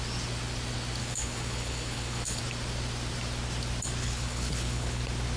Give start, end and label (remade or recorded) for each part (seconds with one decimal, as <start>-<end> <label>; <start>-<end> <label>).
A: 0.0-1.0 recorded; 1.0-2.4 remade; 2.4-4.0 recorded; 4.0-5.0 remade; 5.0-5.4 recorded